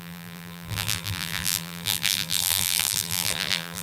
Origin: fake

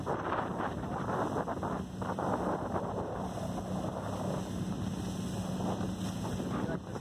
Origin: real